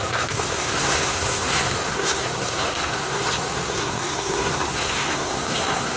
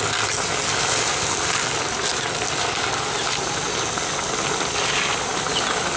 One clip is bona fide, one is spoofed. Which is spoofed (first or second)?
first